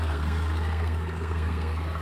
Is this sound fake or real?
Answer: fake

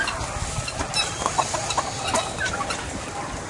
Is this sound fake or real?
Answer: real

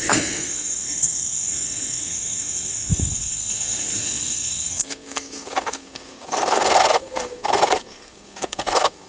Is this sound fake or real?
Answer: fake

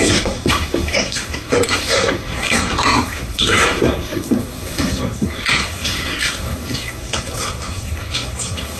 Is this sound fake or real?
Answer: fake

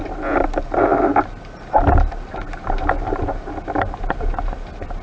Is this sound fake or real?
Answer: real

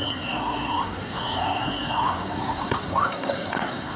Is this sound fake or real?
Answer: fake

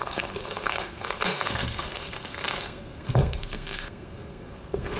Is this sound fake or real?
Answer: fake